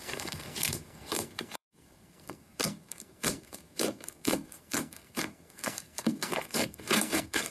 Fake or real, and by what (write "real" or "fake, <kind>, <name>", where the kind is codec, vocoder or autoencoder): fake, codec, SNAC